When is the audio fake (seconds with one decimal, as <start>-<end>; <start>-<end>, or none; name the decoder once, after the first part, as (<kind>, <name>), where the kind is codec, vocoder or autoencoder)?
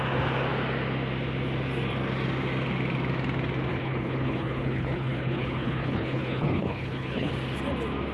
3.7-7.3 (codec, HILCodec)